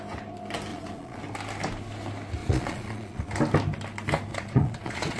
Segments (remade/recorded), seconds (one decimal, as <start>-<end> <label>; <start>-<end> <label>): 0.0-0.7 recorded; 0.7-1.2 remade; 1.2-2.4 recorded; 2.4-3.3 remade; 3.3-4.3 recorded; 4.3-5.2 remade